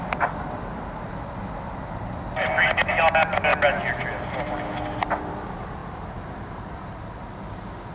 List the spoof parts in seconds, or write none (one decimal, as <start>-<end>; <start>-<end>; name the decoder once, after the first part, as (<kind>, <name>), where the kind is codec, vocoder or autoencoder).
none